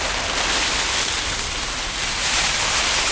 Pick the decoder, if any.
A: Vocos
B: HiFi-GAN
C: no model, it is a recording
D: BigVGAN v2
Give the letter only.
C